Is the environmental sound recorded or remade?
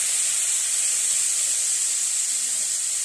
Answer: recorded